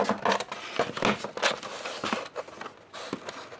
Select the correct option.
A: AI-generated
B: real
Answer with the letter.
B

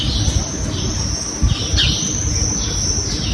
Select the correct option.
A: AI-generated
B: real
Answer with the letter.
B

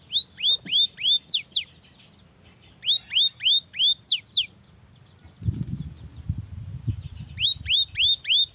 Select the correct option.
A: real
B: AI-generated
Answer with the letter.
A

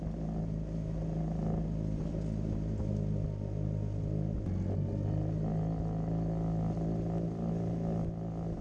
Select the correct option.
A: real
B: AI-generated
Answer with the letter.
A